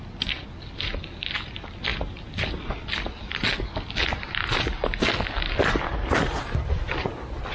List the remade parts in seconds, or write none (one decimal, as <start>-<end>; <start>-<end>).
none

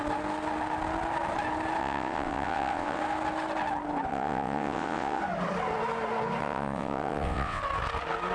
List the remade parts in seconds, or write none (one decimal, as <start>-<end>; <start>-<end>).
1.8-3.0; 4.1-5.2; 6.4-7.6

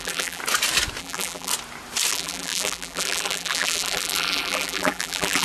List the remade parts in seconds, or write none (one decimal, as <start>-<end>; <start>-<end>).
0.0-0.4; 1.0-1.5; 2.1-5.4

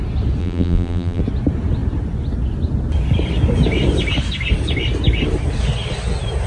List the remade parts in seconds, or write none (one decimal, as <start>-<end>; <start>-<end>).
0.4-1.2

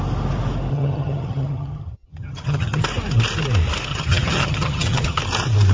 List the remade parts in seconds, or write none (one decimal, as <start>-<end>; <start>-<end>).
0.7-2.8; 3.9-5.2